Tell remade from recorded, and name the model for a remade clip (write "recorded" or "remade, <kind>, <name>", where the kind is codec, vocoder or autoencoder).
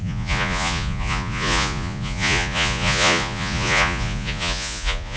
remade, vocoder, Vocos